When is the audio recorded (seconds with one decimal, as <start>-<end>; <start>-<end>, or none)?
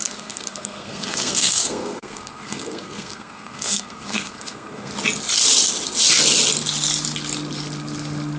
4.9-8.4